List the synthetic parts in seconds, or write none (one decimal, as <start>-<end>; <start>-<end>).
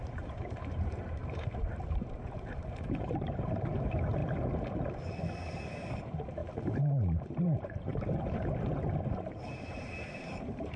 0.0-4.2; 6.0-10.8